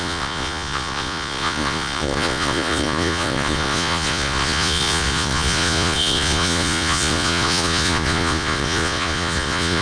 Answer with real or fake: fake